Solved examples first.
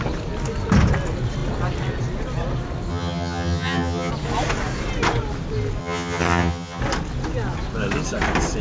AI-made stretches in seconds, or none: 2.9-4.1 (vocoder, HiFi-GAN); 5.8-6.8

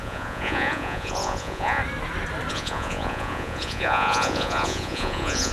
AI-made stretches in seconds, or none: 0.0-1.8 (vocoder, Vocos); 2.5-5.5